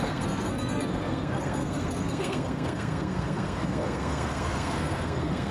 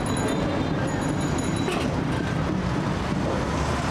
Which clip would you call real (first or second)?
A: second